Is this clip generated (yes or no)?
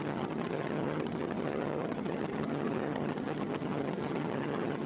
yes